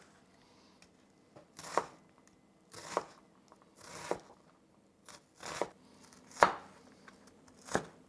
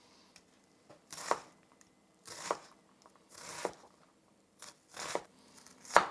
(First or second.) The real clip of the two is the first